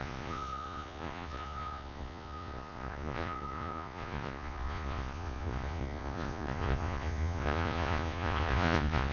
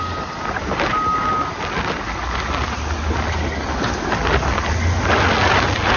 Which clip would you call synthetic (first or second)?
first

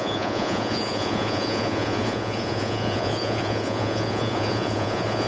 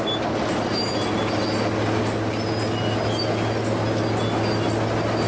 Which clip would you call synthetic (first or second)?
first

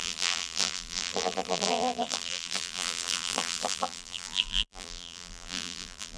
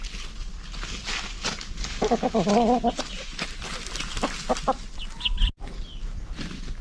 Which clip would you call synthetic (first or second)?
first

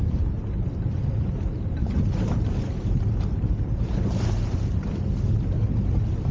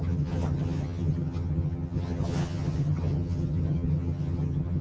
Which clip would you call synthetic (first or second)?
second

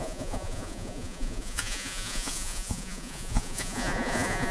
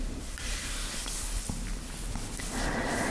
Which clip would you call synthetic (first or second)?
first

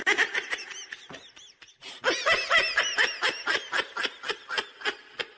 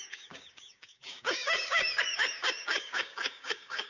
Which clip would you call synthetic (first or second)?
second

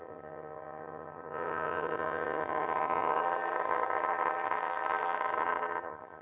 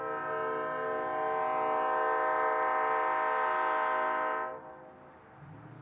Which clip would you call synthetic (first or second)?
first